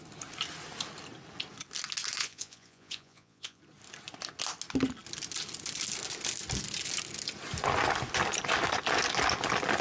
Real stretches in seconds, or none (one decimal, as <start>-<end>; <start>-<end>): 0.0-2.2; 3.6-9.8